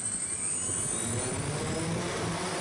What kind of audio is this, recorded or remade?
recorded